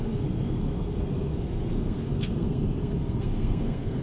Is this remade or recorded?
remade